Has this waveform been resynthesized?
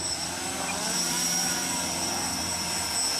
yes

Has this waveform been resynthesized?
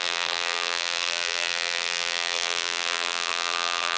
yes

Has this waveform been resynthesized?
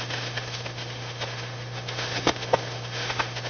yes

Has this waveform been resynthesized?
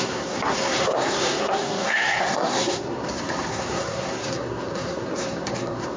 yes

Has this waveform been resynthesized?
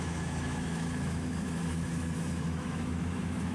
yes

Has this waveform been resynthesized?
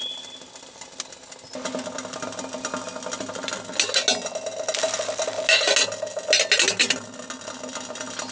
no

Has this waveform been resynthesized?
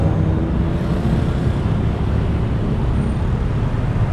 no